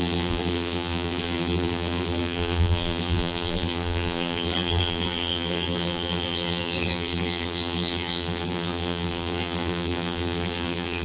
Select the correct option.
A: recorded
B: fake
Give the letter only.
B